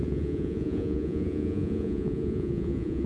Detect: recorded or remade remade